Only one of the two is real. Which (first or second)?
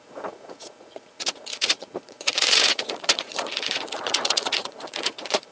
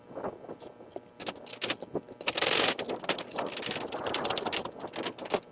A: second